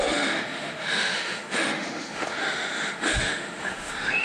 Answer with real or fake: fake